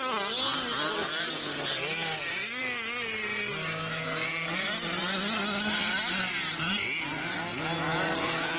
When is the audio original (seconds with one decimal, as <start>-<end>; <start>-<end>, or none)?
0.0-8.6